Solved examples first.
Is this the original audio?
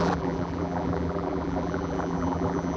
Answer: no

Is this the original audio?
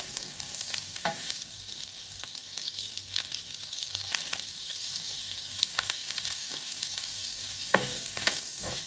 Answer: no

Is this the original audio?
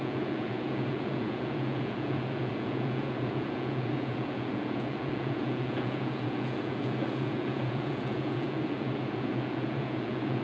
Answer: no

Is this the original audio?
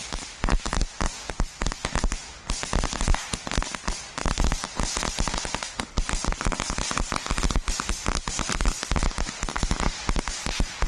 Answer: yes